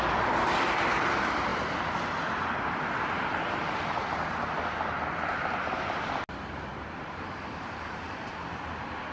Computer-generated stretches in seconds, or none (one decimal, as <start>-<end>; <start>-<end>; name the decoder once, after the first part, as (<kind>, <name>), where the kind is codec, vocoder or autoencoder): 6.7-8.3 (vocoder, BigVGAN v2)

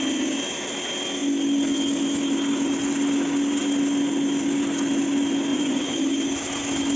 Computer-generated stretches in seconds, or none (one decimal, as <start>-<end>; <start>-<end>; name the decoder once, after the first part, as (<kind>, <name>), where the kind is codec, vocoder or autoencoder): 5.5-6.0 (vocoder, Vocos)

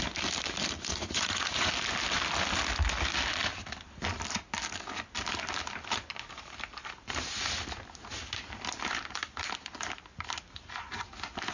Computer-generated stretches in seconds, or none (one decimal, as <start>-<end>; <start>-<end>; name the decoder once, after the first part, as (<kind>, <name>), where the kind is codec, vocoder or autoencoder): 0.9-1.7 (vocoder, Vocos)

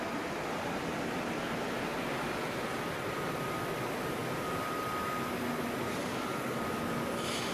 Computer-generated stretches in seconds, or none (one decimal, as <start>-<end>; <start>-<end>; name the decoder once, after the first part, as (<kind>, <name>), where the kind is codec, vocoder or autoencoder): 6.0-6.6 (codec, DAC)

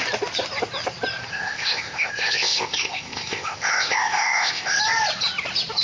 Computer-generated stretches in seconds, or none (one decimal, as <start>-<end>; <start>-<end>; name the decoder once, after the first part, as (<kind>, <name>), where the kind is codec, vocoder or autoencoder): 1.3-4.8 (codec, ZipCodec)